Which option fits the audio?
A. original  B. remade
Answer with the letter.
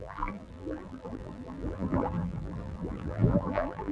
B